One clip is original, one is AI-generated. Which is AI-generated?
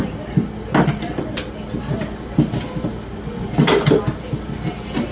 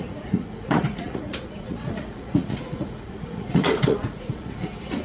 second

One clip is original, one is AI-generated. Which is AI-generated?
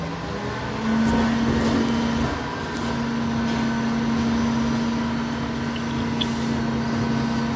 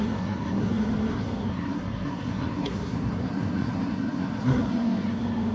second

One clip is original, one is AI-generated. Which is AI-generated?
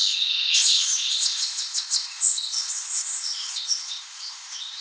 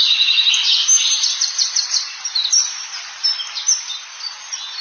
first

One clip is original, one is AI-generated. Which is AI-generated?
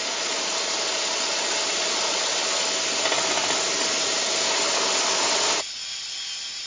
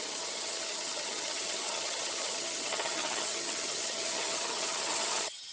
second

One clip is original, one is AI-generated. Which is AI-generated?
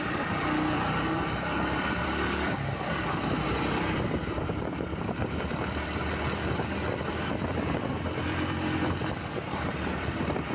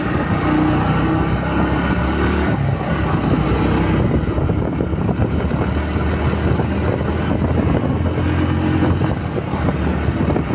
first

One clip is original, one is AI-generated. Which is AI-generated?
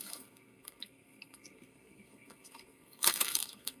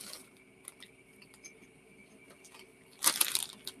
first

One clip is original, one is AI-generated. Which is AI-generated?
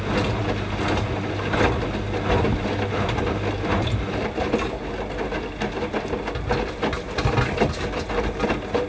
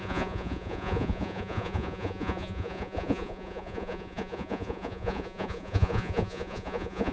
second